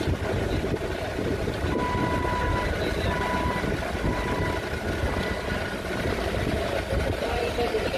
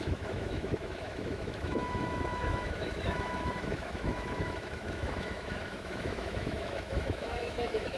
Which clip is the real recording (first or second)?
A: first